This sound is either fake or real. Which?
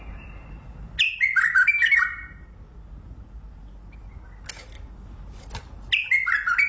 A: real